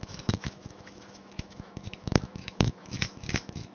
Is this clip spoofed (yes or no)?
yes